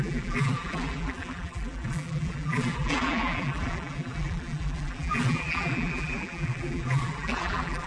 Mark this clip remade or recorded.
remade